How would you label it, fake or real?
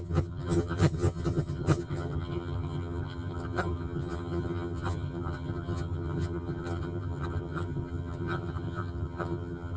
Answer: fake